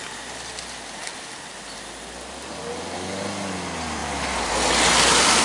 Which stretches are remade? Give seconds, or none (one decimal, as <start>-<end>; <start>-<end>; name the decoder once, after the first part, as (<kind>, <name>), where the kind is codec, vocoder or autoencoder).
none